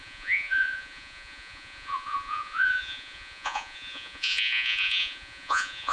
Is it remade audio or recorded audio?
remade